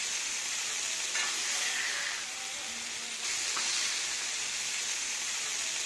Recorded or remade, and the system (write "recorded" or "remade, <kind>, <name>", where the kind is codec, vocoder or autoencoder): recorded